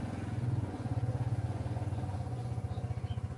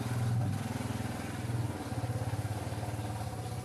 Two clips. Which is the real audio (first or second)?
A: second